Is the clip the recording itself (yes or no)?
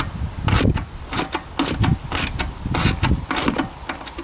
yes